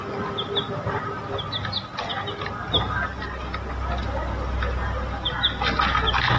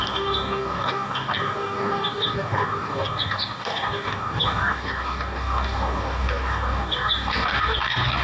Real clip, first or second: first